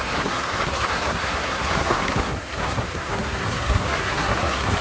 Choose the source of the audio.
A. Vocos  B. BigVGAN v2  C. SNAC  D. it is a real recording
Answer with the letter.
C